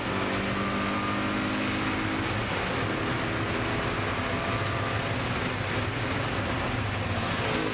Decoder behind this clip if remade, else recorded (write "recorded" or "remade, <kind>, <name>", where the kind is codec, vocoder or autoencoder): recorded